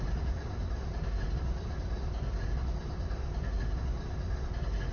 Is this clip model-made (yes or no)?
no